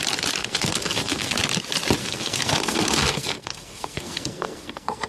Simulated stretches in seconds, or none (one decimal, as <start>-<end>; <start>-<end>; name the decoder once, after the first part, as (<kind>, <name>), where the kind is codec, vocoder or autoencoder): 0.4-1.4 (codec, SNAC); 2.0-5.1

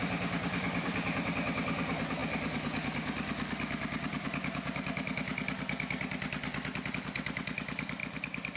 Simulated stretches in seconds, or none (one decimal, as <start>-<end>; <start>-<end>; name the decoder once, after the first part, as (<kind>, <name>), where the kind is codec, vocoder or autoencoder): none

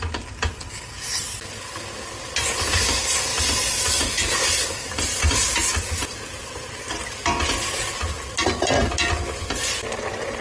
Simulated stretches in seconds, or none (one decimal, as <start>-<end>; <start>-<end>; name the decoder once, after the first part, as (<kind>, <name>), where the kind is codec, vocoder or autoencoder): none

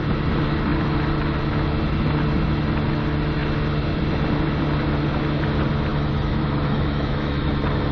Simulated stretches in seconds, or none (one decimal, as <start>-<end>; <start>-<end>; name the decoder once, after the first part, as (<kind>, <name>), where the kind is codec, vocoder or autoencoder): 5.9-7.5 (autoencoder, DAC-VAE)

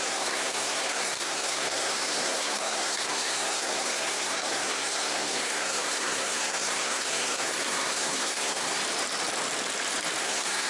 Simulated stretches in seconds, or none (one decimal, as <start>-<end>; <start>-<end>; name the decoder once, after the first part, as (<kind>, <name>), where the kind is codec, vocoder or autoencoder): 0.0-8.8 (codec, SNAC); 10.2-10.7

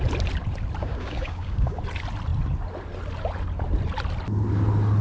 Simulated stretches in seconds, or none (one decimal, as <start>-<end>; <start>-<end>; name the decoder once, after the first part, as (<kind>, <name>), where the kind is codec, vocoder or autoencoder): 0.8-1.8 (codec, DAC)